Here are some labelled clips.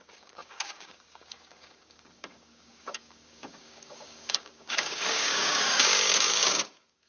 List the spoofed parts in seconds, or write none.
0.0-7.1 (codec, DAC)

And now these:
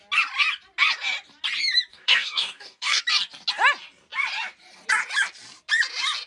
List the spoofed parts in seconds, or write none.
1.9-3.0 (codec, DAC)

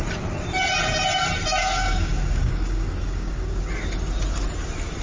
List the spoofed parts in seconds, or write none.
1.6-3.7 (codec, DAC)

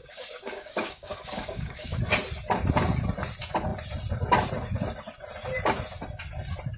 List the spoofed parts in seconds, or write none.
0.0-2.0 (codec, DAC)